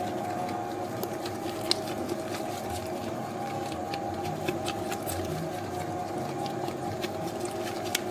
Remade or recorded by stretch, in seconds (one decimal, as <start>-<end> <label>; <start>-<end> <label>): 0.0-3.0 recorded; 3.0-3.6 remade; 3.6-4.4 recorded; 4.4-5.0 remade; 5.0-6.0 recorded; 6.0-7.3 remade; 7.3-8.1 recorded